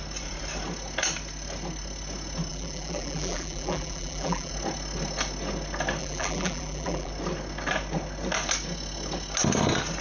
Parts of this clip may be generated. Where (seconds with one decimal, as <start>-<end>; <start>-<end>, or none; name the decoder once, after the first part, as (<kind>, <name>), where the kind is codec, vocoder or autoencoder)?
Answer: 2.5-4.5 (vocoder, BigVGAN v2); 6.0-7.1